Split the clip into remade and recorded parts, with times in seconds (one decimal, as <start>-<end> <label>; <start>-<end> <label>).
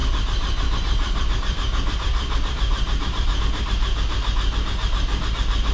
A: 0.0-3.4 remade; 3.4-5.7 recorded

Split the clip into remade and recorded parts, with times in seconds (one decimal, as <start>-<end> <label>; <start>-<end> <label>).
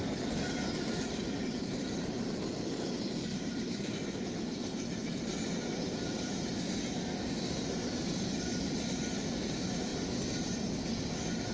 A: 0.0-1.4 recorded; 1.4-2.3 remade; 2.3-3.3 recorded; 3.3-3.9 remade; 3.9-11.5 recorded